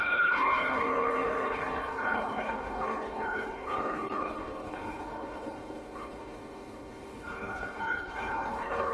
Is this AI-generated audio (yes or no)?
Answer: yes